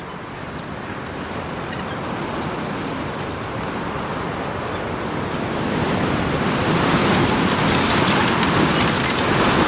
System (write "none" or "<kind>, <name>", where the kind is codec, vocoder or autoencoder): none